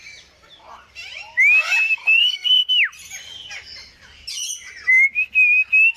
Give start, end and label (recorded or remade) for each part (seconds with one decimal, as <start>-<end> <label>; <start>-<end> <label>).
0.0-2.0 recorded; 2.0-2.7 remade; 2.7-6.0 recorded